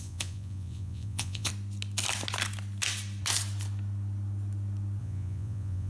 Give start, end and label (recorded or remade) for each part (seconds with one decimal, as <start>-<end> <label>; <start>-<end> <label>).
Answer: 0.0-1.5 remade; 1.5-5.0 recorded; 5.0-5.9 remade